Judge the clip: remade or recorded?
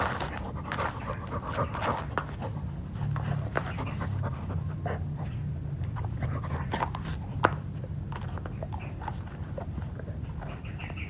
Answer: recorded